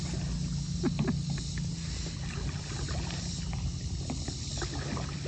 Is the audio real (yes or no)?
yes